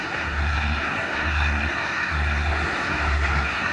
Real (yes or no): no